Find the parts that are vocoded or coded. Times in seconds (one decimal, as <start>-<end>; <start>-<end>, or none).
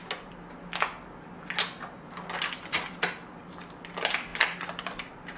4.3-5.0